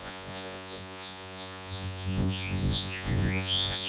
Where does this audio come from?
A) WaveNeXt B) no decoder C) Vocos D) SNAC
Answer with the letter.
C